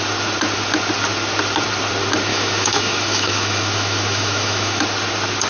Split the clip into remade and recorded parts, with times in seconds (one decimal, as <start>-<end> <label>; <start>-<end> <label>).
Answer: 0.0-2.3 recorded; 2.3-4.8 remade; 4.8-5.5 recorded